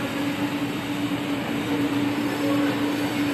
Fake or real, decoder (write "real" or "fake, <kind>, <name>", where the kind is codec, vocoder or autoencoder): real